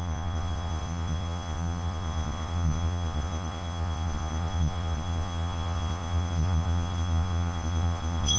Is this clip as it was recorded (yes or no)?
no